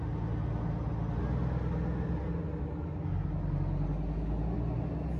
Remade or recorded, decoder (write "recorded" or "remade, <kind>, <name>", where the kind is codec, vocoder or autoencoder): recorded